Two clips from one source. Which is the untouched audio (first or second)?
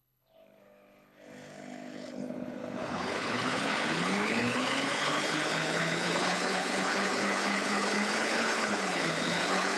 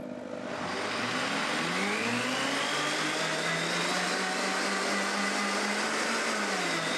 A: second